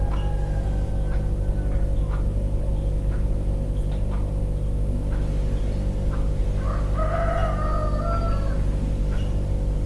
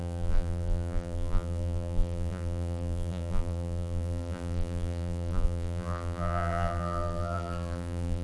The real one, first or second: first